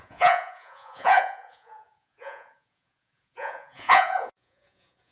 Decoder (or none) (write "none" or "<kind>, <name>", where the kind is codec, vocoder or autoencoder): vocoder, Vocos